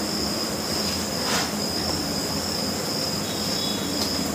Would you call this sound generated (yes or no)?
no